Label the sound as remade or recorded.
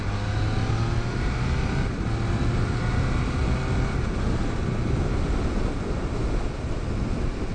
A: recorded